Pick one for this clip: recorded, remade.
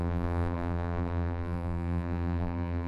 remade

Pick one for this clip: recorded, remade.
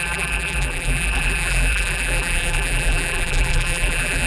remade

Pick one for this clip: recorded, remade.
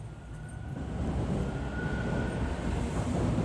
recorded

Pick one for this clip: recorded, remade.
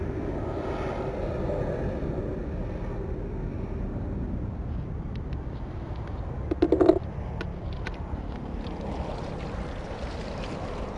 recorded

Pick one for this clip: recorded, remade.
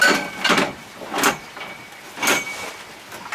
recorded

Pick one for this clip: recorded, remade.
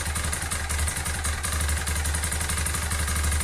recorded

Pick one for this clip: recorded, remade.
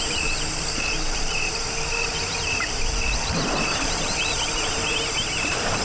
remade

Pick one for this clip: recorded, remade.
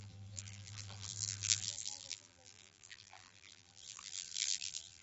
remade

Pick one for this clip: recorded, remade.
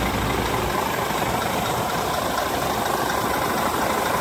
recorded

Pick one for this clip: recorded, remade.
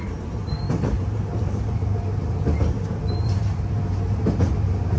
remade